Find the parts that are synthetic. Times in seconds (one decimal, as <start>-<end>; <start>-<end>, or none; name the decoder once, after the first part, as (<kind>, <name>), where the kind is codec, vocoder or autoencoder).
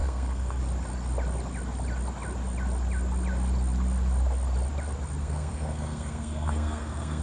0.0-0.6 (codec, SNAC); 5.2-7.2